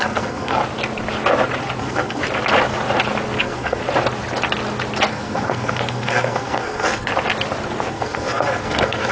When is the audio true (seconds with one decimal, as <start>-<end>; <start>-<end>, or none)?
0.6-1.8; 2.2-3.4; 3.8-5.1; 7.1-7.9